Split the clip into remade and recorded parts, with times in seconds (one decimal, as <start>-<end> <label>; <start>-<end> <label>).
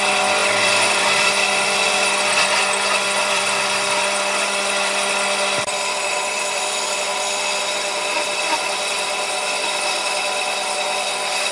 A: 0.0-0.4 recorded; 0.4-1.4 remade; 1.4-3.2 recorded; 3.2-6.8 remade; 6.8-11.5 recorded